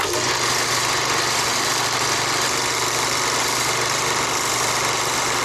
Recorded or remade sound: recorded